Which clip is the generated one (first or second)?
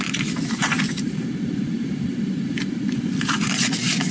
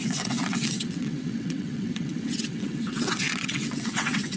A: second